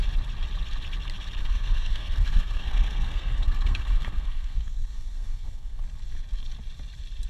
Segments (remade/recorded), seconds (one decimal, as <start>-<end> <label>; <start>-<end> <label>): 0.0-1.4 recorded; 1.4-5.8 remade; 5.8-7.3 recorded

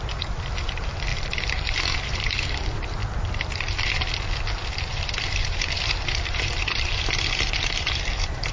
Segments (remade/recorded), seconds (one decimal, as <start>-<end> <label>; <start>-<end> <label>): 0.0-3.0 remade; 3.0-4.7 recorded; 4.7-8.5 remade

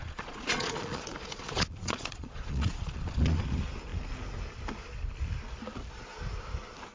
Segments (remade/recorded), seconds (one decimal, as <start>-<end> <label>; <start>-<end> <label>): 0.0-3.4 remade; 3.4-6.9 recorded

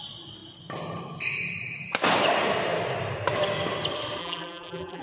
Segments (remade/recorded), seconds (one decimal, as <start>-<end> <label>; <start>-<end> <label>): 0.0-4.2 recorded; 4.2-5.0 remade

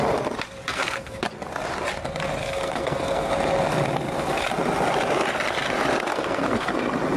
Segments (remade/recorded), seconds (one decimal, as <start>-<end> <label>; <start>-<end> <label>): 0.0-0.7 recorded; 0.7-1.2 remade; 1.2-2.4 recorded; 2.4-3.3 remade; 3.3-6.1 recorded; 6.1-6.7 remade; 6.7-7.2 recorded

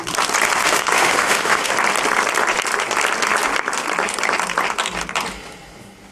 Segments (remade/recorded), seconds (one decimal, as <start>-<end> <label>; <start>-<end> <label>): 0.0-0.6 recorded; 0.6-1.7 remade; 1.7-6.1 recorded

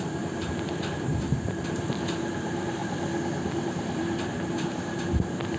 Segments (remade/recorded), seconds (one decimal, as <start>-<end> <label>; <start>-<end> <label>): 0.0-2.8 remade; 2.8-3.6 recorded; 3.6-5.6 remade